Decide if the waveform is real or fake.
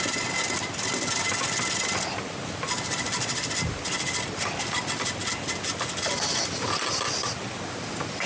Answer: real